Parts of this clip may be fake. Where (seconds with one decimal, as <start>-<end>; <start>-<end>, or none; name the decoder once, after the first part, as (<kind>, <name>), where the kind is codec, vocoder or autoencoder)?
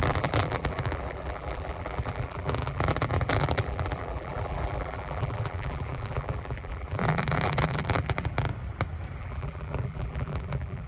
0.0-8.5 (vocoder, BigVGAN v2); 9.2-10.9